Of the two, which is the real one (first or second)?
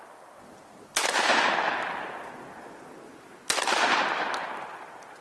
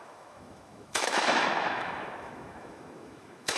first